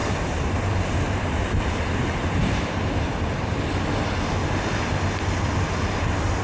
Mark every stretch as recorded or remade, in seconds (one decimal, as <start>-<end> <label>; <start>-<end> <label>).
0.0-3.6 remade; 3.6-4.4 recorded; 4.4-4.9 remade; 4.9-6.4 recorded